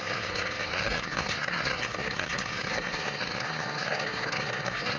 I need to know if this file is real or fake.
fake